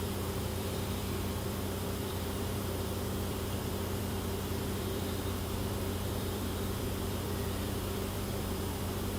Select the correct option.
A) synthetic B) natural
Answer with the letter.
A